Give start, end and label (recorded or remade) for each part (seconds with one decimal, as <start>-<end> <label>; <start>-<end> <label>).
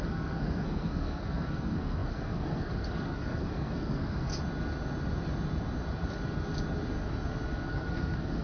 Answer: 0.0-4.3 remade; 4.3-7.7 recorded; 7.7-8.4 remade